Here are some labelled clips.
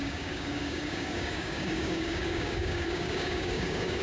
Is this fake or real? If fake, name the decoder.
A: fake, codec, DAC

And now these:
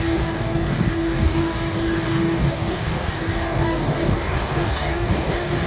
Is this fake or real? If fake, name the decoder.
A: fake, codec, DAC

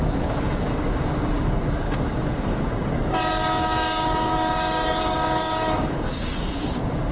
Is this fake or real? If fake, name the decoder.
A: fake, codec, DAC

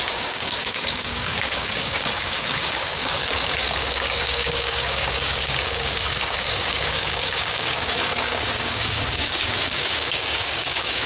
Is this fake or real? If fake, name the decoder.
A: fake, codec, DAC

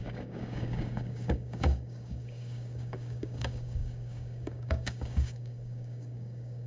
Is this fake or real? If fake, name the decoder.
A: fake, codec, DAC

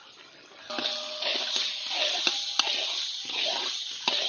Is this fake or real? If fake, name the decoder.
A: real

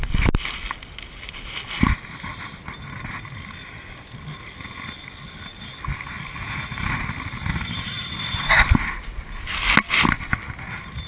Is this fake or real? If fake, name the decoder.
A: real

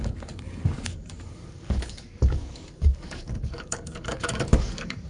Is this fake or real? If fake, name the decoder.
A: fake, codec, DAC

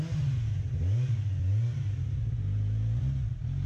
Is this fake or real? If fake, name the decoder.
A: real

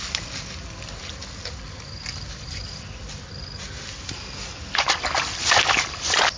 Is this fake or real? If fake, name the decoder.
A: real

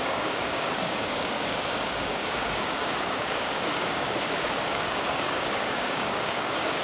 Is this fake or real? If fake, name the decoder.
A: fake, codec, DAC